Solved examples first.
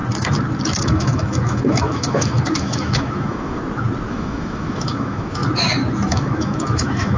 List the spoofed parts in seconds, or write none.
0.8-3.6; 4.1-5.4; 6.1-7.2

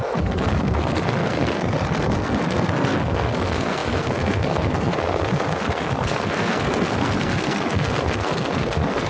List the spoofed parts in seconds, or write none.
0.0-9.1

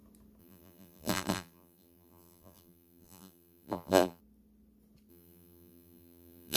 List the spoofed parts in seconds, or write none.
0.4-4.2; 5.1-6.6

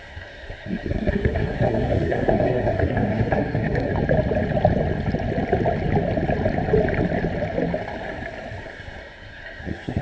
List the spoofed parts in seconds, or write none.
0.0-3.9; 8.6-10.0

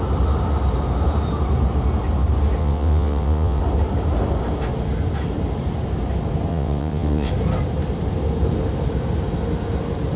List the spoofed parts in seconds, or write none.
2.6-3.6; 6.5-7.3

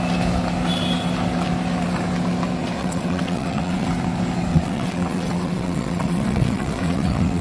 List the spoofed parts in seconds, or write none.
2.8-3.9; 4.5-7.4

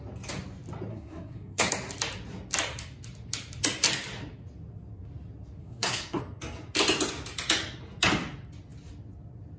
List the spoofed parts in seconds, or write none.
0.9-1.7; 5.6-6.2